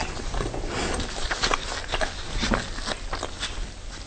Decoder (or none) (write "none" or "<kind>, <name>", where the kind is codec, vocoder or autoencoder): none